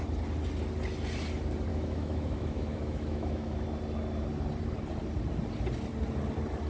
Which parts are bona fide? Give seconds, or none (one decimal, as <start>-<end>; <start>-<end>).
0.0-1.7; 3.6-6.7